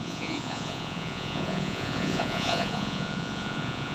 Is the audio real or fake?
fake